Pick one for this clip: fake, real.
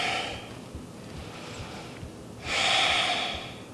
real